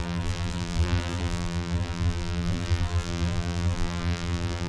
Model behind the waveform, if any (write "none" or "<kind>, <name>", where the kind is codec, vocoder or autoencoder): vocoder, BigVGAN v2